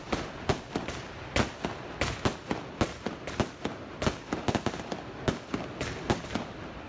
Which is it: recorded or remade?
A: recorded